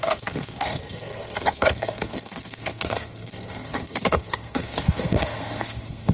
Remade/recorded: remade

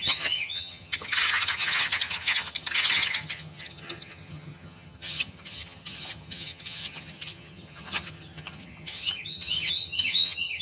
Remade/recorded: remade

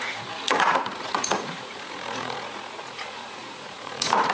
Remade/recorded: remade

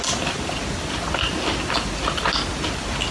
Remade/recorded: recorded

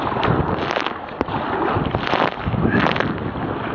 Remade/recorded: recorded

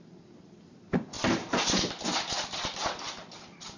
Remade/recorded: recorded